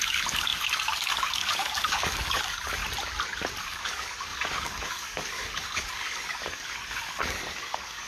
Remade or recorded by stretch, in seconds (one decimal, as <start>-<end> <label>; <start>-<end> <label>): 0.0-2.8 remade; 2.8-3.6 recorded; 3.6-8.1 remade